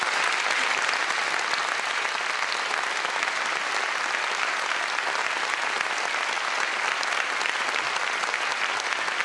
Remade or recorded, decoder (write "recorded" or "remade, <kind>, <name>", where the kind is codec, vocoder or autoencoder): recorded